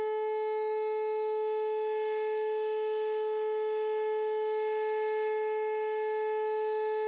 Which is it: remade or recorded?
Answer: remade